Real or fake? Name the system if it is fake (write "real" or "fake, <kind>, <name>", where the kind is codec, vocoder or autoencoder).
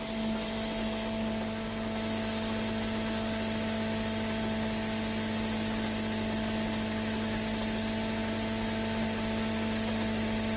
real